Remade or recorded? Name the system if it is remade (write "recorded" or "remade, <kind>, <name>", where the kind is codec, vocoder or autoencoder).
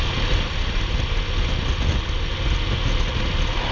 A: recorded